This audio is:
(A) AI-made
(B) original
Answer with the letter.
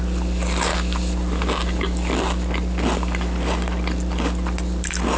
B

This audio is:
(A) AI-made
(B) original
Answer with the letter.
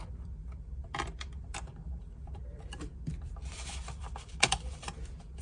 A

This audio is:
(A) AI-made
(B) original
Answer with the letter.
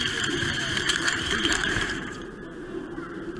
A